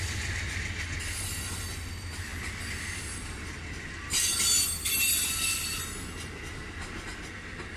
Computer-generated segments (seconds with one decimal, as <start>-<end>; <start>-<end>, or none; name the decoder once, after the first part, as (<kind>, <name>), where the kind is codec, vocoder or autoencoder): none